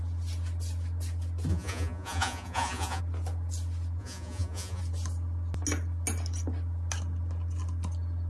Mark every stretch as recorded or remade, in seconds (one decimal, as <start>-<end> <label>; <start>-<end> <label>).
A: 0.0-1.5 recorded; 1.5-3.0 remade; 3.0-4.0 recorded; 4.0-4.8 remade; 4.8-8.3 recorded